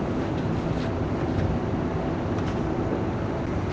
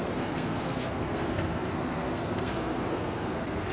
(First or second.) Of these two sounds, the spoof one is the second